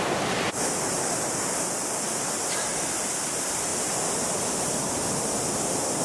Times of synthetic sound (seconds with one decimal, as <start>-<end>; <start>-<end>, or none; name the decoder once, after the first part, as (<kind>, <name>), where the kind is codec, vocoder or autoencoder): none